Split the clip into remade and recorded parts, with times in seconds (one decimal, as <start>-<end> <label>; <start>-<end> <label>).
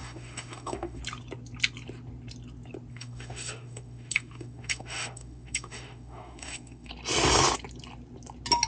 0.0-1.0 remade; 1.0-2.9 recorded; 2.9-6.9 remade; 6.9-8.7 recorded